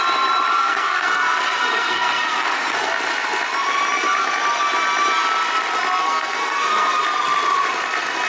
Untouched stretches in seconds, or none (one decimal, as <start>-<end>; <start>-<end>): 0.0-0.6; 2.9-6.0; 7.0-8.3